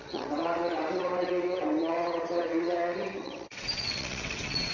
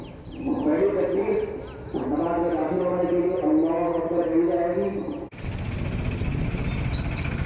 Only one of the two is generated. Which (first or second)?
first